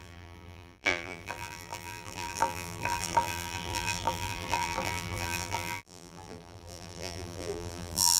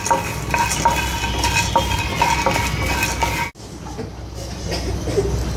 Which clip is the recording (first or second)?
second